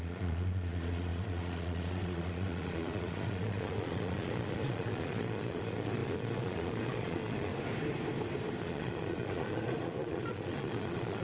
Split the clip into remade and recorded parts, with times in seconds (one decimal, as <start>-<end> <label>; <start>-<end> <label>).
0.0-7.5 remade; 7.5-8.6 recorded; 8.6-11.2 remade